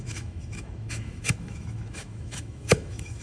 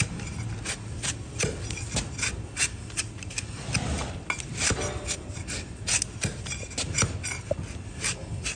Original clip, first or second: second